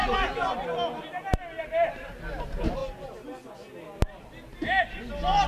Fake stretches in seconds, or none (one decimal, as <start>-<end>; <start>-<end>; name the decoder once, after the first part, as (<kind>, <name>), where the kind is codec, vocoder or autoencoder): none